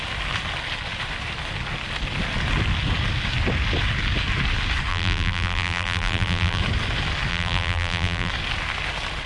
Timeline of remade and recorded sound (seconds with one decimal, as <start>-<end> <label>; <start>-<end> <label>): 0.0-4.9 recorded; 4.9-6.6 remade; 6.6-7.3 recorded; 7.3-8.3 remade; 8.3-9.3 recorded

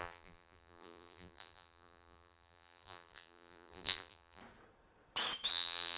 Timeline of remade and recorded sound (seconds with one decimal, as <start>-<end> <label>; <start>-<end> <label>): 0.0-4.4 remade; 4.4-5.5 recorded; 5.5-6.0 remade

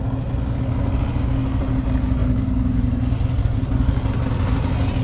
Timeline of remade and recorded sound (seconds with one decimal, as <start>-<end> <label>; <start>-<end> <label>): 0.0-5.0 recorded